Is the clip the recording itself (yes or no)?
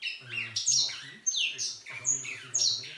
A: yes